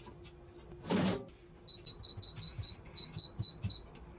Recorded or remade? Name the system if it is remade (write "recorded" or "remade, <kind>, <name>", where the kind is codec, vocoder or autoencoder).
recorded